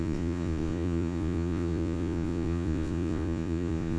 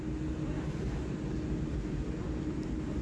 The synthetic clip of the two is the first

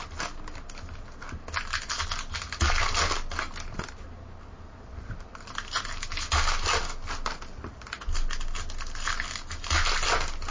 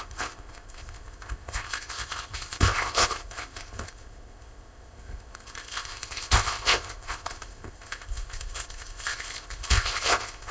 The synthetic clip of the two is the second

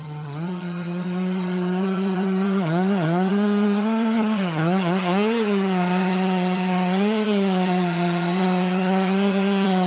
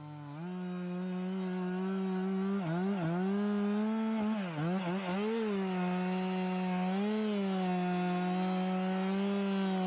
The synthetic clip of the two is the first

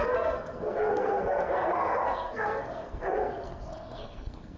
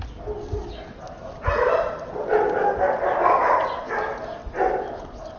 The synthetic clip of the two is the first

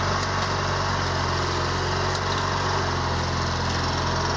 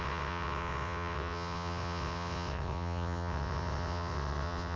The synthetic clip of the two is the second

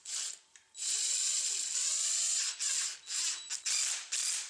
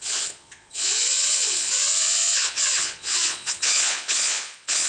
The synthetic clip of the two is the second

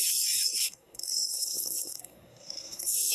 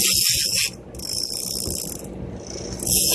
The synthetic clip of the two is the first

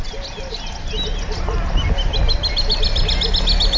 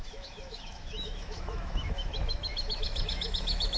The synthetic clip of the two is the second